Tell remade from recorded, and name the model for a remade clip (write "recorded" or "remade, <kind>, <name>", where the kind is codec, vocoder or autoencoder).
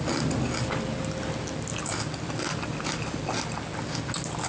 recorded